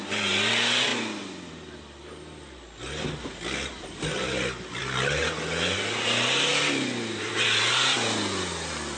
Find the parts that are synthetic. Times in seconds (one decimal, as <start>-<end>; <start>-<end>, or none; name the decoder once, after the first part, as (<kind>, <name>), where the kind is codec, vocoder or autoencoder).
none